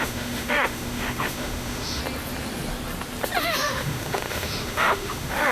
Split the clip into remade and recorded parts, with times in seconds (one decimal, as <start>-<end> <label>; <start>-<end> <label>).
0.0-2.0 remade; 2.0-3.4 recorded; 3.4-5.5 remade